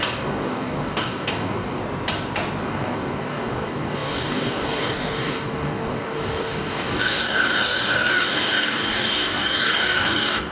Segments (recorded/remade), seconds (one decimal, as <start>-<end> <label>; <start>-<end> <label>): 0.0-1.8 remade; 1.8-2.6 recorded; 2.6-10.5 remade